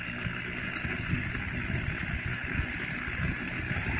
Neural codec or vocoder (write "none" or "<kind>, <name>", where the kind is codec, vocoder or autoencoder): none